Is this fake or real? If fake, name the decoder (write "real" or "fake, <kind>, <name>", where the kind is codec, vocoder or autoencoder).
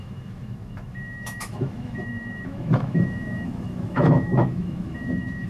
fake, autoencoder, DAC-VAE